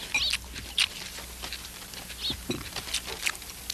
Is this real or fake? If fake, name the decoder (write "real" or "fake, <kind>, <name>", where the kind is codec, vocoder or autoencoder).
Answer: real